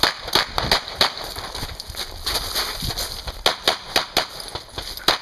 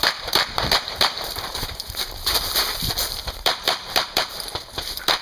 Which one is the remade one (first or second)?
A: second